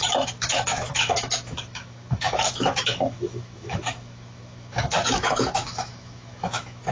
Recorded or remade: remade